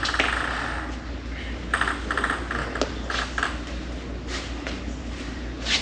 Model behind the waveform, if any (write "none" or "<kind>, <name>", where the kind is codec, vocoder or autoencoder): none